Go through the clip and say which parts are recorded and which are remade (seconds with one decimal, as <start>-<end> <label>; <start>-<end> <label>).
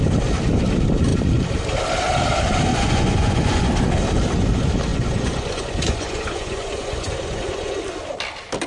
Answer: 0.0-2.7 recorded; 2.7-3.7 remade; 3.7-4.9 recorded; 4.9-7.8 remade; 7.8-8.7 recorded